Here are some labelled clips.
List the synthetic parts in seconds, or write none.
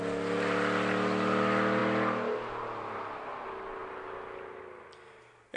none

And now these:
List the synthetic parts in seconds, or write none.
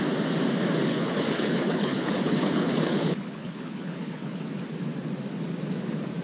0.9-4.6 (codec, HILCodec)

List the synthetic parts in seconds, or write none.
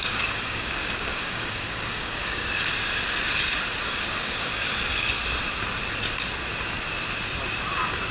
0.0-2.7 (codec, DAC); 3.8-5.2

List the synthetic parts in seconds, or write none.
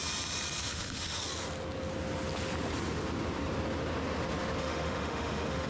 0.6-1.2 (autoencoder, DAC-VAE); 4.6-5.7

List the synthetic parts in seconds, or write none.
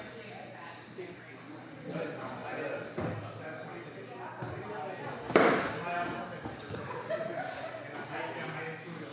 none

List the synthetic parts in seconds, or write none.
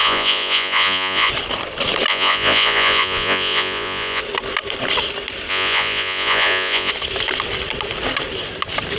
0.0-1.3 (vocoder, Vocos); 2.1-4.2; 5.5-6.9